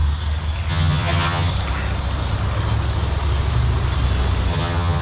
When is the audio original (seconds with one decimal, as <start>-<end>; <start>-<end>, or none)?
0.0-0.7; 1.5-4.5